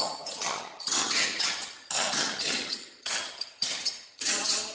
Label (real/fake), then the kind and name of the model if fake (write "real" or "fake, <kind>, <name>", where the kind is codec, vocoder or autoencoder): fake, vocoder, HiFi-GAN